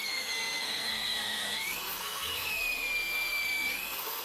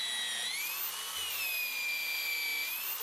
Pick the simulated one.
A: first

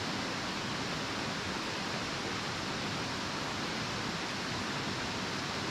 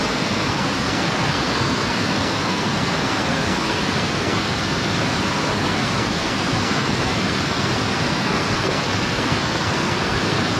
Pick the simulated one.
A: second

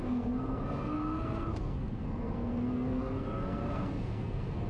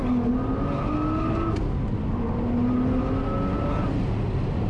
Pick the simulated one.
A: first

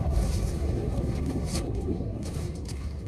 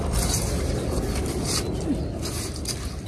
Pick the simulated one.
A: first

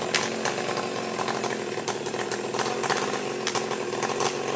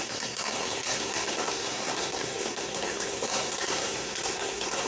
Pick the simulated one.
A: second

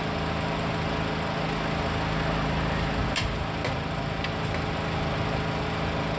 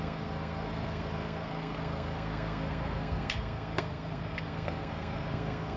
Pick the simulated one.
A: second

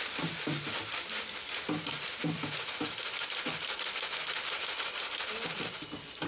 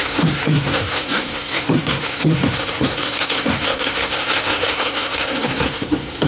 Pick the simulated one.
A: second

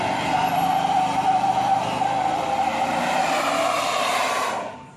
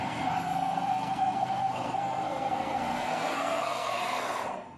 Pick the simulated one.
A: second